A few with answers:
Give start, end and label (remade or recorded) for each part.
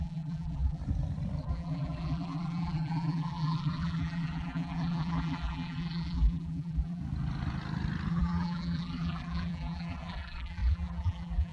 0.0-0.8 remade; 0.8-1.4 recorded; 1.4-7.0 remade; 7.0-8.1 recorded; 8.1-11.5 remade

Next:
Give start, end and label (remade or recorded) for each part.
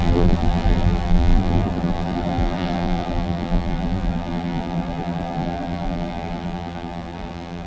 0.0-7.7 remade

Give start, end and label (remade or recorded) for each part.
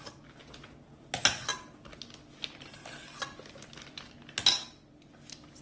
0.0-5.6 recorded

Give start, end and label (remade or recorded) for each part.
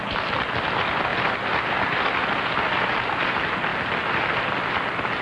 0.0-5.2 recorded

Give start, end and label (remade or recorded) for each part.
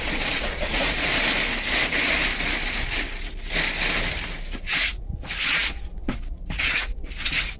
0.0-1.1 remade; 1.1-4.6 recorded; 4.6-7.6 remade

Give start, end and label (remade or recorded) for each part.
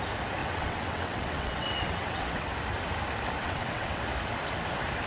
0.0-0.4 recorded; 0.4-2.5 remade; 2.5-3.4 recorded; 3.4-4.0 remade; 4.0-5.1 recorded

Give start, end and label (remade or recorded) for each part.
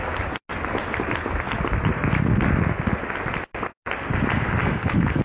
0.0-4.6 recorded; 4.6-5.2 remade